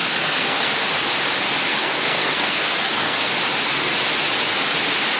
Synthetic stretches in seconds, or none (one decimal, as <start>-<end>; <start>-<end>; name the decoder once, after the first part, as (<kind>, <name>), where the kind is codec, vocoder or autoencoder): 0.0-0.7 (codec, SNAC); 1.7-3.3